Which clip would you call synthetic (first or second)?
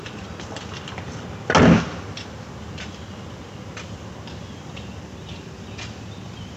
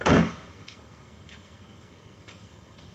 second